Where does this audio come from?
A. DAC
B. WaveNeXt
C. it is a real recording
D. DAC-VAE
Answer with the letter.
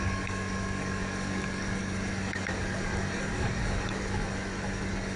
A